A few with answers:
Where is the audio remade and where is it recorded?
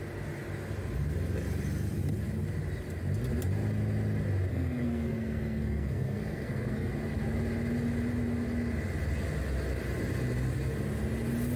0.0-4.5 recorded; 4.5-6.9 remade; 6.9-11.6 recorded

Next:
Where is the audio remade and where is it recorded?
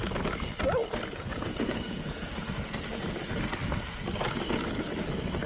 0.0-1.3 recorded; 1.3-2.3 remade; 2.3-5.5 recorded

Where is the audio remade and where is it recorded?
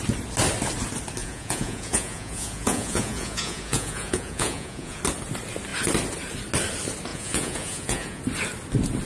0.0-1.2 recorded; 1.2-5.0 remade; 5.0-7.1 recorded; 7.1-8.2 remade; 8.2-9.1 recorded